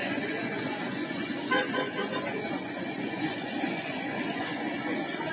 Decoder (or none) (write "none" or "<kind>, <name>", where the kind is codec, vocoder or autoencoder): vocoder, Vocos